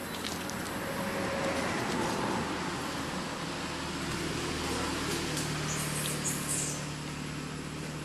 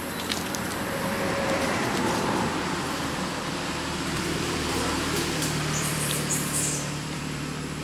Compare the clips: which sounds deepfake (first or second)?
second